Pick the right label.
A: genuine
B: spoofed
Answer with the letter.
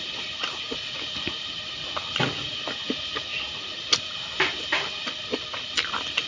A